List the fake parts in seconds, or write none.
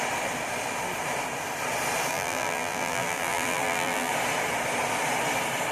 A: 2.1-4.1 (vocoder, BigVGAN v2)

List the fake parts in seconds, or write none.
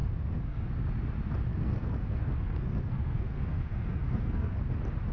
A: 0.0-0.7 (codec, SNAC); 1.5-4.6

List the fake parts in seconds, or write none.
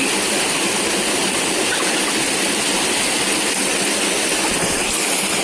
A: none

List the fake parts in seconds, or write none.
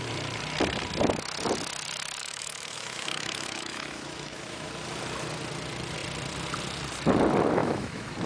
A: 2.2-4.7 (autoencoder, DAC-VAE); 7.6-8.3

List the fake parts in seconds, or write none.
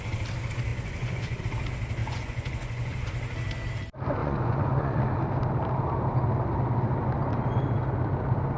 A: 0.7-1.4 (vocoder, Vocos); 2.0-3.1; 4.2-5.0